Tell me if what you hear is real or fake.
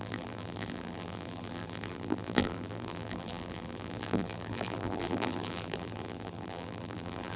fake